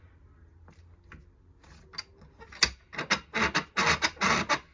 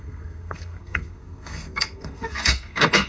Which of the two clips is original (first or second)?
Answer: first